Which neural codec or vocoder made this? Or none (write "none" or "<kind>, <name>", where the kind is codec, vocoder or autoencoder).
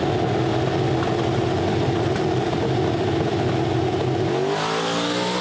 none